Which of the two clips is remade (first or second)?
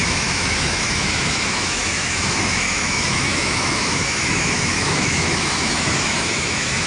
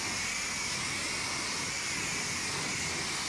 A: first